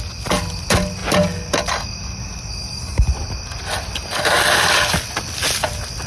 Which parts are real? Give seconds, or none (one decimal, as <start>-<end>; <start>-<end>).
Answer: 0.0-6.1